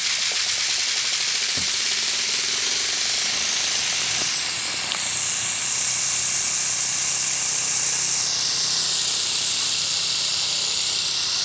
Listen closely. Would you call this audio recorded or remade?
recorded